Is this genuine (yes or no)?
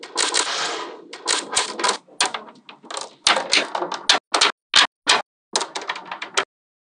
yes